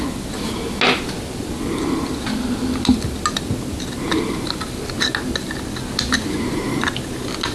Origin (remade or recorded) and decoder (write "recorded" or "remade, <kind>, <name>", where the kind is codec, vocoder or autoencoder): recorded